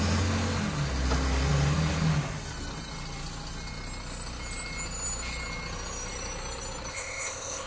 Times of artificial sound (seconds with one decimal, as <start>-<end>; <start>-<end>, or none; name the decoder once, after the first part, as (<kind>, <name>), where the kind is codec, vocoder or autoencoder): 6.9-7.7 (codec, ZipCodec)